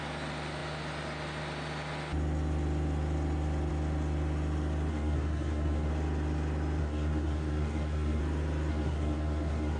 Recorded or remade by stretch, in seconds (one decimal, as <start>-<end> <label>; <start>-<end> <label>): 0.0-4.9 recorded; 4.9-5.9 remade; 5.9-6.8 recorded; 6.8-8.2 remade; 8.2-8.7 recorded; 8.7-9.8 remade